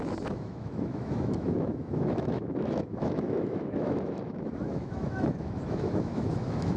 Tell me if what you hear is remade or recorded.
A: remade